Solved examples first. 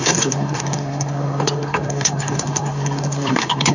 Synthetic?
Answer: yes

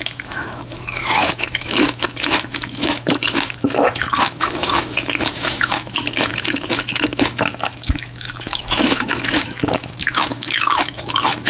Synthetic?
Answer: yes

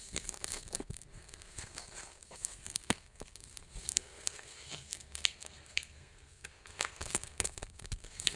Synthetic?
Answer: yes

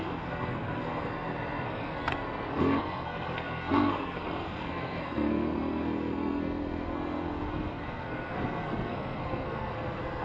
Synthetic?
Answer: yes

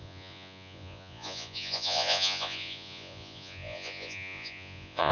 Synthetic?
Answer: yes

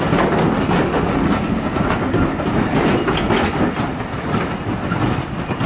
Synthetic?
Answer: no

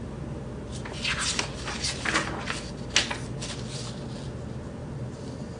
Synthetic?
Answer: no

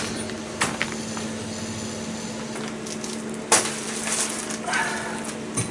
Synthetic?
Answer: no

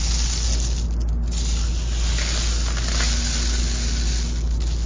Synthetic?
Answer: no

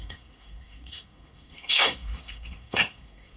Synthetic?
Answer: yes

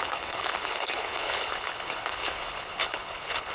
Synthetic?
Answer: yes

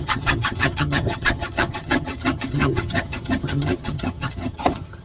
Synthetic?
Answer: yes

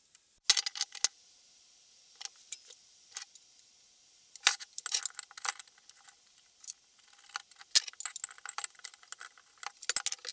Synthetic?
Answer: no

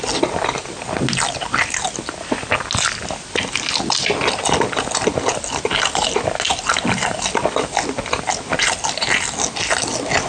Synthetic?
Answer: no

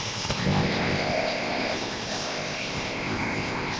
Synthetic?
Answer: yes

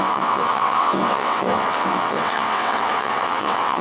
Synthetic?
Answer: yes